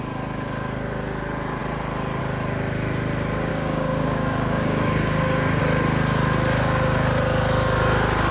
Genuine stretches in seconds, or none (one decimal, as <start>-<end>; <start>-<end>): 0.0-3.5; 5.6-8.3

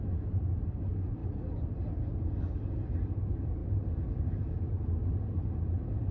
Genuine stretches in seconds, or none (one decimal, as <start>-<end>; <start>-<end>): 0.0-6.1

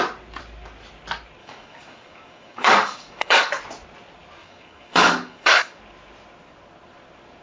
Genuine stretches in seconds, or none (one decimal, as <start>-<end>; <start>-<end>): 0.0-1.4; 3.6-4.4; 5.8-7.4